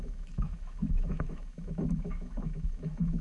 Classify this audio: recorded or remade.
remade